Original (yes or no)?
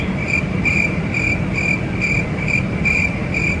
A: yes